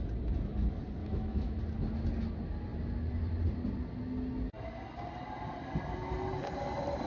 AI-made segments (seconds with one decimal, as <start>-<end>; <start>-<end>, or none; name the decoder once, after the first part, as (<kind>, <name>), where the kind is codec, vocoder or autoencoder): 1.0-1.6 (autoencoder, DAC-VAE)